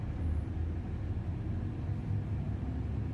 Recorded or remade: remade